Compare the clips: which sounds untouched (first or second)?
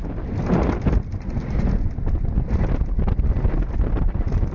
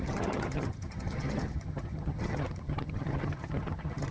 first